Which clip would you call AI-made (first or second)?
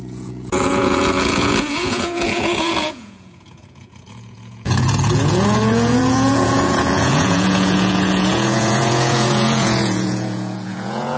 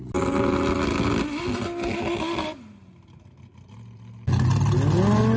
first